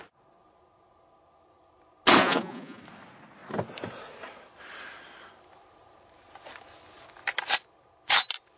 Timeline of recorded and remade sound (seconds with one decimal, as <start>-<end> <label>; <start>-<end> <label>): 0.0-2.2 recorded; 2.2-2.8 remade; 2.8-8.6 recorded